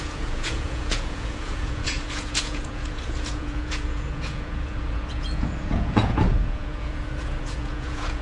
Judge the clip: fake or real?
fake